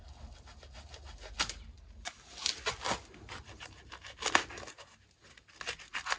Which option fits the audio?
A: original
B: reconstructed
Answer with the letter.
A